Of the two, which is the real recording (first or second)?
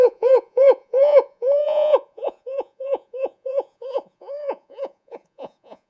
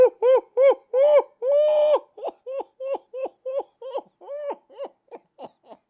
second